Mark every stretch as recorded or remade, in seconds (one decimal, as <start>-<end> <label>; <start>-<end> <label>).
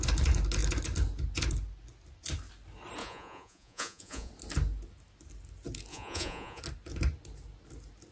0.0-3.0 recorded; 3.0-4.3 remade; 4.3-5.9 recorded; 5.9-6.6 remade; 6.6-8.1 recorded